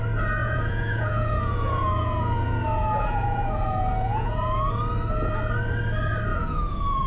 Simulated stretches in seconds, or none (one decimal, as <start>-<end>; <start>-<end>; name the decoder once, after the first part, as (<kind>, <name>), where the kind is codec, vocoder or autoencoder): 0.4-4.7 (vocoder, Vocos); 6.3-7.1